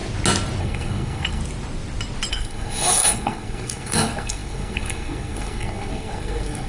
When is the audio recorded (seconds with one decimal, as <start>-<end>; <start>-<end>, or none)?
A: 0.0-0.6; 1.4-2.3